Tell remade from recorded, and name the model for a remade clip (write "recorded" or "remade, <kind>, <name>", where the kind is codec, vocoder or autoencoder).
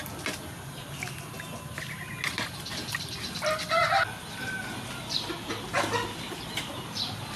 recorded